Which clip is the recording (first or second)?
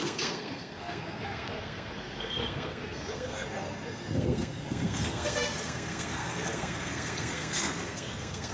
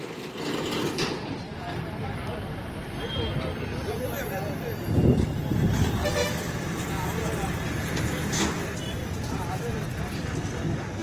second